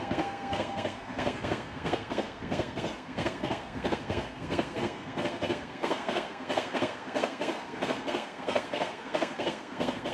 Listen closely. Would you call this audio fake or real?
fake